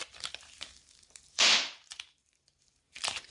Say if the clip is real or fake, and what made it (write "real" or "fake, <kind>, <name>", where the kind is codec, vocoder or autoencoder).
fake, vocoder, BigVGAN v2